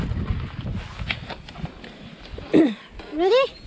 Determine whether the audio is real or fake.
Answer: real